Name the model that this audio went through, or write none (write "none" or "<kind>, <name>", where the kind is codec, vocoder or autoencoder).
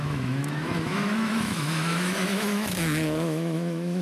autoencoder, DAC-VAE